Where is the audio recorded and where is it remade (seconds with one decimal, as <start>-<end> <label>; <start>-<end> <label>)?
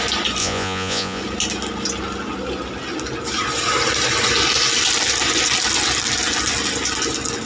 0.0-0.4 recorded; 0.4-1.2 remade; 1.2-7.5 recorded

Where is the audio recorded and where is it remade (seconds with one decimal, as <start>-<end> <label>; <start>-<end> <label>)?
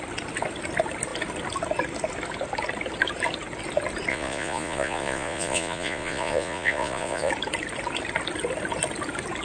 0.0-4.1 recorded; 4.1-7.3 remade; 7.3-9.4 recorded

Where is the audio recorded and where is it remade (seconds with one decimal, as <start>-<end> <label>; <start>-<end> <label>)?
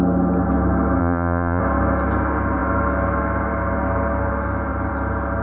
0.0-1.0 recorded; 1.0-1.6 remade; 1.6-5.4 recorded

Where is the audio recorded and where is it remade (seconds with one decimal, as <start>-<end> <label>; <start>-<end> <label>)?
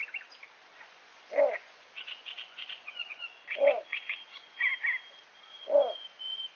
0.0-0.6 recorded; 0.6-4.7 remade; 4.7-5.5 recorded; 5.5-6.5 remade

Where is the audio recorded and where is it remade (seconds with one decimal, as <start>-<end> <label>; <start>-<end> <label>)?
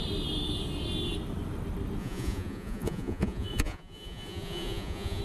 0.0-2.0 recorded; 2.0-5.2 remade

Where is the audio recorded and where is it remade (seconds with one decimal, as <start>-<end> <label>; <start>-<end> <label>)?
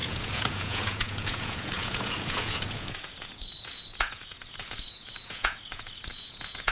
0.0-6.7 remade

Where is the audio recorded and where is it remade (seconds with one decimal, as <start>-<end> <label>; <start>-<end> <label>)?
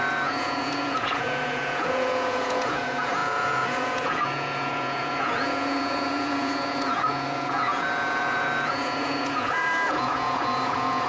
0.0-11.1 remade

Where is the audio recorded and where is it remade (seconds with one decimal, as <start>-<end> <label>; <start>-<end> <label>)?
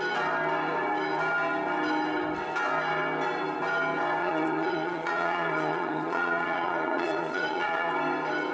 0.0-4.2 recorded; 4.2-7.9 remade; 7.9-8.5 recorded